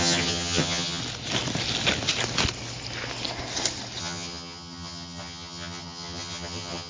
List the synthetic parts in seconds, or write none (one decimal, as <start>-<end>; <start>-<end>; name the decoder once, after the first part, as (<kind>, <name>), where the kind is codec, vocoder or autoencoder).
0.0-1.0 (vocoder, HiFi-GAN); 4.0-6.9